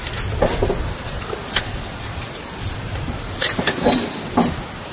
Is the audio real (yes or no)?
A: yes